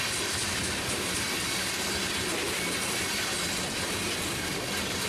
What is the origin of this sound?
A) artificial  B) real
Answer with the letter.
A